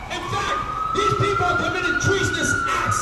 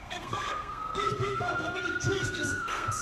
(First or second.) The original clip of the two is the first